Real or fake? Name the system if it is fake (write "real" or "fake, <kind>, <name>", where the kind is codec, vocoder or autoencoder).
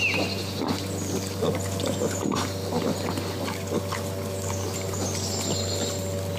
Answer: real